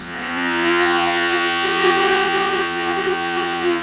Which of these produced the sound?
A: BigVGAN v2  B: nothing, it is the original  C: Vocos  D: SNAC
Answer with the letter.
C